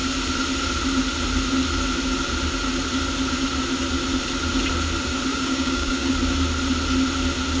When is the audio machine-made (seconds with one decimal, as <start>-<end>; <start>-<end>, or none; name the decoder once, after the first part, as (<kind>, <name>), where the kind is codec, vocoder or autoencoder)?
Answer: 5.3-6.1 (codec, DAC)